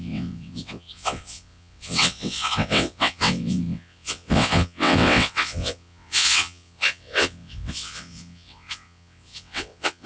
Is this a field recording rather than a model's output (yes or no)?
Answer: no